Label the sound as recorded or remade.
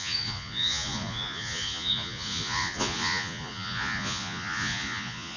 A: remade